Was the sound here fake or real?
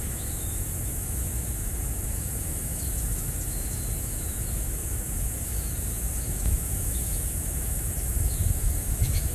fake